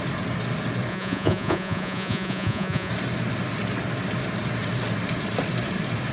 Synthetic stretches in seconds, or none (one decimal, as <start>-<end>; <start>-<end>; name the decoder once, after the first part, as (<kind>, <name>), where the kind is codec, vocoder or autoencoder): 0.9-2.9 (vocoder, Vocos)